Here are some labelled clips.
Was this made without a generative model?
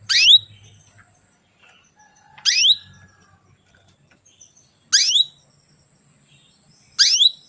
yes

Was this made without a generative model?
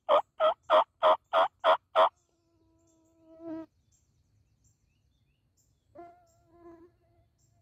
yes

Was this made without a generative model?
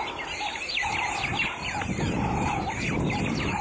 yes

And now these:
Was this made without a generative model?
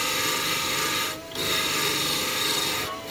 yes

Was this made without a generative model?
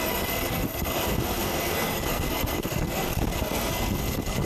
no